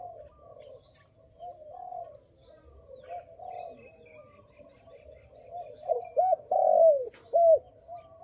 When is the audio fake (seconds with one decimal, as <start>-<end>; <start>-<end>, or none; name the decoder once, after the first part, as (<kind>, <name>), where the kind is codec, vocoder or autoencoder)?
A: none